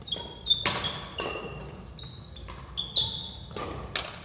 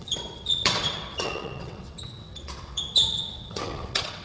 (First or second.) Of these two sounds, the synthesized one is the second